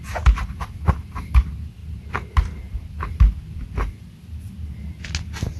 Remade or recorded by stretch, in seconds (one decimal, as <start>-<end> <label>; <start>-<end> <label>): 0.0-5.6 recorded

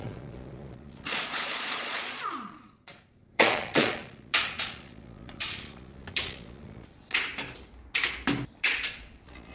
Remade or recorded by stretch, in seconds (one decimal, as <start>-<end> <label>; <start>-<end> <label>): 0.0-7.3 remade; 7.3-8.6 recorded; 8.6-9.5 remade

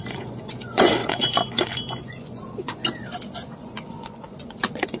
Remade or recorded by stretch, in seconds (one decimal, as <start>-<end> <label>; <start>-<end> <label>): 0.0-2.8 remade; 2.8-3.6 recorded; 3.6-5.0 remade

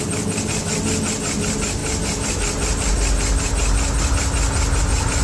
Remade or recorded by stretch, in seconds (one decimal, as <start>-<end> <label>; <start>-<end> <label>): 0.0-5.2 recorded

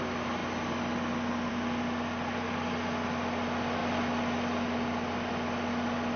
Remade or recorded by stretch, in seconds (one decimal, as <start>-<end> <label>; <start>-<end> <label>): 0.0-6.2 recorded